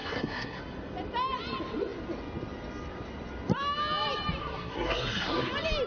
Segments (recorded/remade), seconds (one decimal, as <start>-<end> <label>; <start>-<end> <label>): 0.0-0.6 remade; 0.6-4.4 recorded; 4.4-5.5 remade; 5.5-5.9 recorded